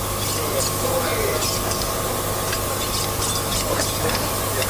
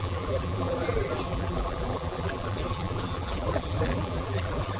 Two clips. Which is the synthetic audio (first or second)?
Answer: second